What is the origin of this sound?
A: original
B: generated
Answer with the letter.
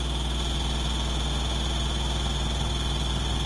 A